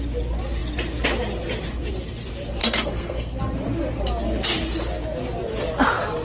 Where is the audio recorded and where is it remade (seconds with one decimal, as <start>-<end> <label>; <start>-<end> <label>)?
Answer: 0.0-2.6 recorded; 2.6-3.4 remade; 3.4-6.2 recorded